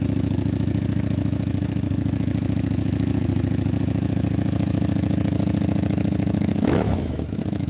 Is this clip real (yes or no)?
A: no